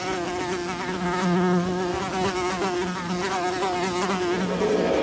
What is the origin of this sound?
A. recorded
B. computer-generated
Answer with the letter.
A